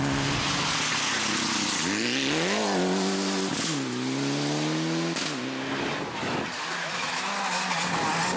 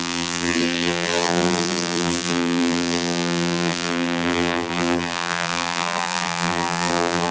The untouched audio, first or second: first